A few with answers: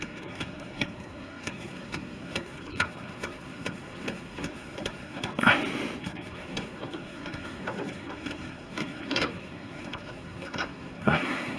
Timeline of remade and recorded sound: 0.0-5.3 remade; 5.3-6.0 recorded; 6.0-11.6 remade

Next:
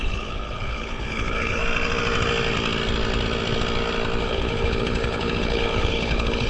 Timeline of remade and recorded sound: 0.0-1.6 remade; 1.6-4.2 recorded; 4.2-6.5 remade

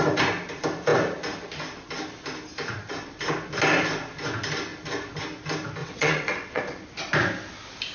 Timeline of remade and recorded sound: 0.0-5.8 recorded; 5.8-6.6 remade; 6.6-7.9 recorded

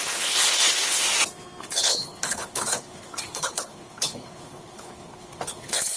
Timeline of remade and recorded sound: 0.0-1.0 remade; 1.0-1.6 recorded; 1.6-6.0 remade